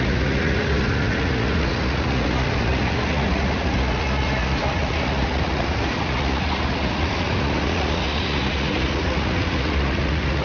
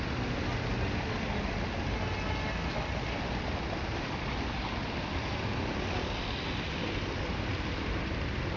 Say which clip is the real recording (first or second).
second